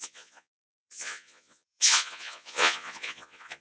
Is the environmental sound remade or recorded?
remade